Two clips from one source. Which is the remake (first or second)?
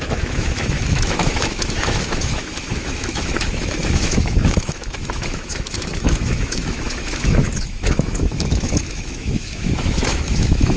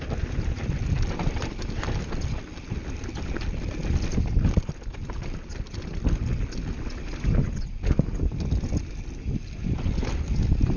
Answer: first